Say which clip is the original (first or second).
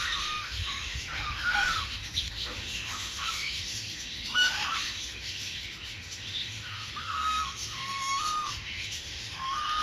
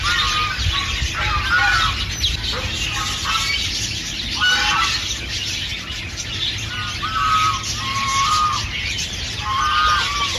second